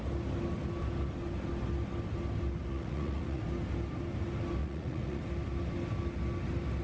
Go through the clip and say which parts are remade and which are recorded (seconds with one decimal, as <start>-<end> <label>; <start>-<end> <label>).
0.0-2.7 recorded; 2.7-3.4 remade; 3.4-4.6 recorded; 4.6-5.2 remade; 5.2-6.8 recorded